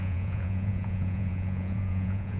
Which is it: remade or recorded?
remade